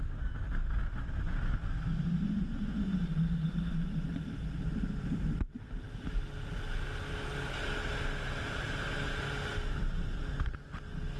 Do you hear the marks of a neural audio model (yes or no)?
no